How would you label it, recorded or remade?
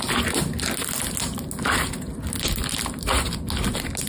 recorded